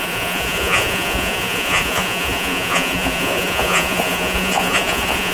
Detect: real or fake fake